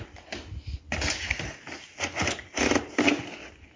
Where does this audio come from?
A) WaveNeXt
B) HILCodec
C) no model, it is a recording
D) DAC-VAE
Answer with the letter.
C